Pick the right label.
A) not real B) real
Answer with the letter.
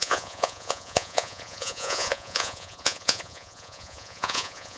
A